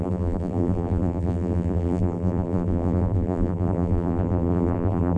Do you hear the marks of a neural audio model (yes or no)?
yes